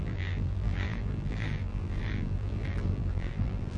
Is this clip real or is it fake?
fake